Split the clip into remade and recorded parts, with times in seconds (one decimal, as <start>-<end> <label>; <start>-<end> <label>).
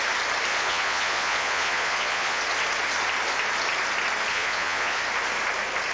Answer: 0.0-0.5 recorded; 0.5-2.4 remade; 2.4-4.3 recorded; 4.3-5.0 remade; 5.0-5.9 recorded